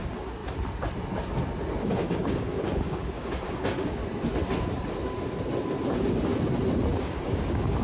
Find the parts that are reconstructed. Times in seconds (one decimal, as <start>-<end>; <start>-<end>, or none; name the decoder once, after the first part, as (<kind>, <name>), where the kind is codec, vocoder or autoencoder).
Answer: 0.0-0.4 (codec, DAC); 1.8-4.0; 7.0-7.8